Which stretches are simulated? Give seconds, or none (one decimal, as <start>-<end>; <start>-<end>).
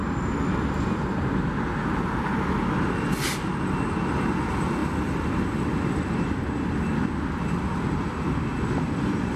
none